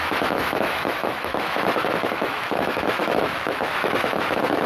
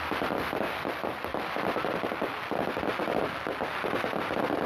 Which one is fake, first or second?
first